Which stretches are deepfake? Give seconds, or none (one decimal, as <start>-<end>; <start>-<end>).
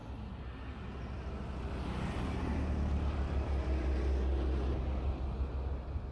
none